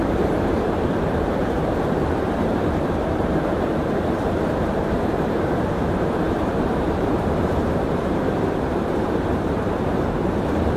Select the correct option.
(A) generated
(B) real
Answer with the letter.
A